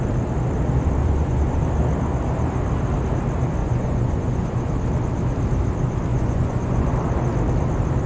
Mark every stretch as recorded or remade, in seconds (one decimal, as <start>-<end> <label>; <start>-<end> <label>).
0.0-1.0 recorded; 1.0-1.6 remade; 1.6-3.6 recorded; 3.6-4.7 remade; 4.7-6.1 recorded; 6.1-6.9 remade; 6.9-8.1 recorded